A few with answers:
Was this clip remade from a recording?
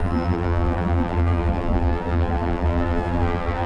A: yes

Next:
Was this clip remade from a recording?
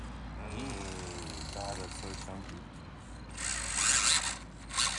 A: no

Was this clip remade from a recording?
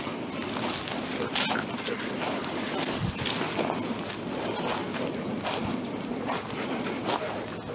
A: no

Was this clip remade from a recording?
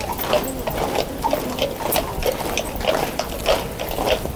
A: no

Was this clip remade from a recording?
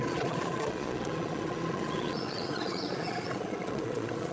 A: yes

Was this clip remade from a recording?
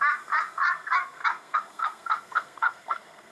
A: yes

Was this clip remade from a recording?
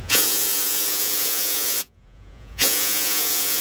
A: yes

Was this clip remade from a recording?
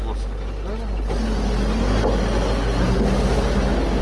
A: no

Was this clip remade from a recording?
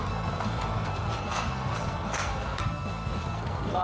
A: yes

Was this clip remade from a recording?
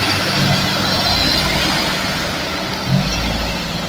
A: no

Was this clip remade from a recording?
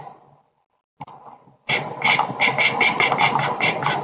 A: no